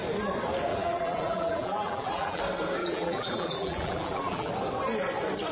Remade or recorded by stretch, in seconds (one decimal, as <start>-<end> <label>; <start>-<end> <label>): 0.0-0.7 recorded; 0.7-2.4 remade; 2.4-2.8 recorded; 2.8-4.5 remade; 4.5-5.5 recorded